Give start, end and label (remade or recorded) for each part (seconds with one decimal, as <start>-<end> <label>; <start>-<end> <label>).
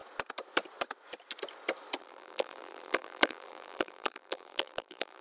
0.0-2.0 recorded; 2.0-5.2 remade